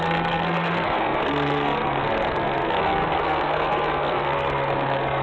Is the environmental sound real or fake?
fake